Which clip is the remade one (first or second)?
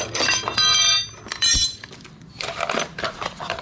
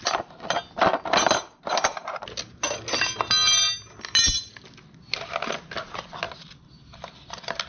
first